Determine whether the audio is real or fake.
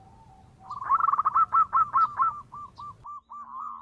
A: real